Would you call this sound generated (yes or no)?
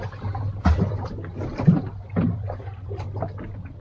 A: yes